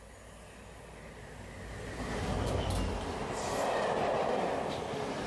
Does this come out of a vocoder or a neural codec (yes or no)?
no